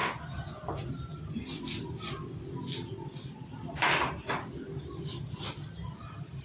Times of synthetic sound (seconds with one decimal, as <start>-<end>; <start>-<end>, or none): none

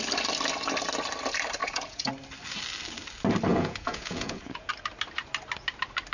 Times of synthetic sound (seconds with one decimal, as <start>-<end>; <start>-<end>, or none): 1.6-2.1; 3.5-4.7

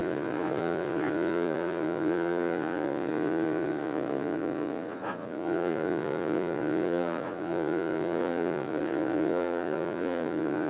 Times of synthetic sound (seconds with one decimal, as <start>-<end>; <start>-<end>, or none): 0.0-10.7

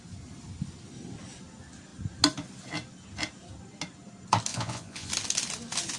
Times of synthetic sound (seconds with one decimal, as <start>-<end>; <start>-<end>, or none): 4.5-5.1

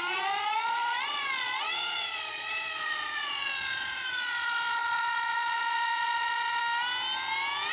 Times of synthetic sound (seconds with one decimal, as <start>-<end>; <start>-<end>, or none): 0.0-6.6

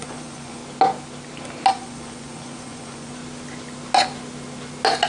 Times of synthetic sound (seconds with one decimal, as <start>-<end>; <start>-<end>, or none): 0.0-0.6; 1.7-3.2